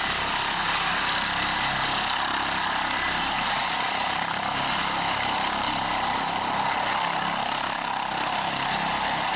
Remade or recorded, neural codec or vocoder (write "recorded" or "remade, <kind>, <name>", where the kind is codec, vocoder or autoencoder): recorded